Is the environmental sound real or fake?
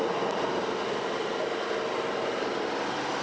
real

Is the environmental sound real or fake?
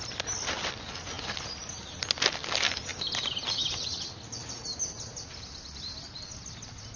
real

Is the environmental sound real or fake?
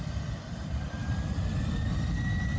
real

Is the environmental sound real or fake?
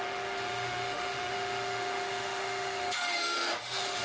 fake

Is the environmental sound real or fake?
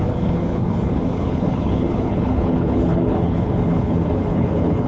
fake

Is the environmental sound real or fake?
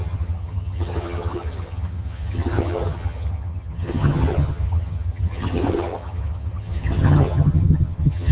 fake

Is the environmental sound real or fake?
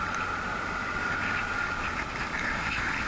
real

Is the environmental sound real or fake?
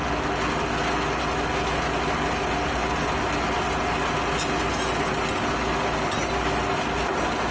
real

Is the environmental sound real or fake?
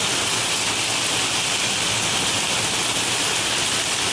real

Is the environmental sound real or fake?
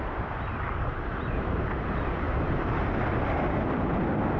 real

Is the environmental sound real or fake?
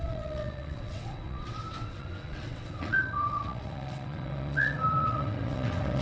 fake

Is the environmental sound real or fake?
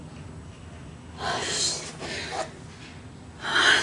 real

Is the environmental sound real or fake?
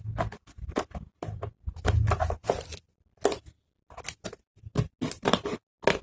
real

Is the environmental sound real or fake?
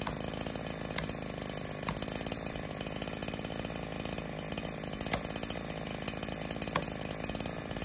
real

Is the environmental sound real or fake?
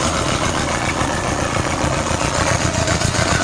fake